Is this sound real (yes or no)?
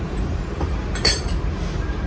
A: no